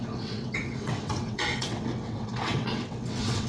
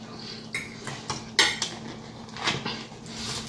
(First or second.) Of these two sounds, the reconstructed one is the first